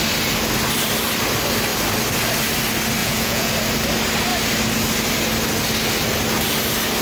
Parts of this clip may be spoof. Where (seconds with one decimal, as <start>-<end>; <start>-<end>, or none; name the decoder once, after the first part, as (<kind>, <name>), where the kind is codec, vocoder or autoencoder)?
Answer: 3.0-3.5 (vocoder, Vocos)